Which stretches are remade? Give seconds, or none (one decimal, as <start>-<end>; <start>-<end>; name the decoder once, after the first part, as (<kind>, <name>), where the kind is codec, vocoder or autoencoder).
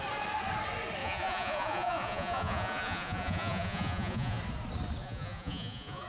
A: 1.0-4.4 (vocoder, Vocos); 5.0-6.1